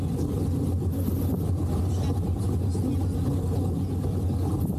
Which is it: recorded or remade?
recorded